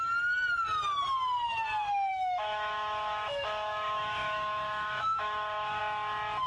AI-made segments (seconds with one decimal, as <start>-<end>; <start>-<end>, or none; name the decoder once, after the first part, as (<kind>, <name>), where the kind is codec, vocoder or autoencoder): 2.1-5.8 (autoencoder, DAC-VAE)